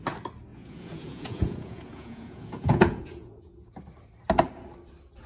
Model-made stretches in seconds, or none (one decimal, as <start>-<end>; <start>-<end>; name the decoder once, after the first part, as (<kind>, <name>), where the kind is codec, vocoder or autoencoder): 0.5-3.7 (vocoder, Vocos)